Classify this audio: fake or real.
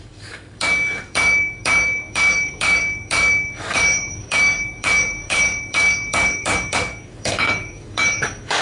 fake